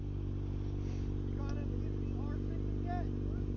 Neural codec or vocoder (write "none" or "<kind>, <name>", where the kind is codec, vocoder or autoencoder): none